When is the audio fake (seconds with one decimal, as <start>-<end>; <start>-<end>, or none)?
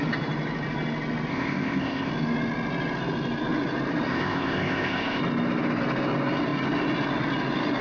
1.3-2.1; 4.1-5.2